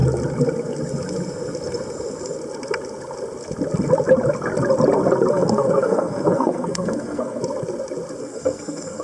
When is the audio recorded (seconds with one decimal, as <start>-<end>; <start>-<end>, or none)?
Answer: 0.0-5.3; 7.4-8.2